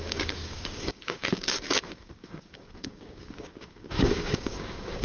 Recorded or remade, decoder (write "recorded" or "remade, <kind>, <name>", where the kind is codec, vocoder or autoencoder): remade, codec, DAC